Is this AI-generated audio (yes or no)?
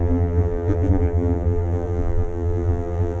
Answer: yes